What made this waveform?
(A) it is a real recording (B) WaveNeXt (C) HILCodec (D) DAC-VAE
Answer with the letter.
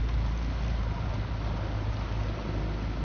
A